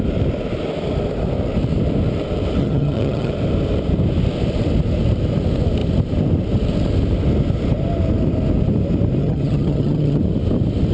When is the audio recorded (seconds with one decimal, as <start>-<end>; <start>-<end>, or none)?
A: 0.0-2.6; 3.3-9.2; 10.2-10.9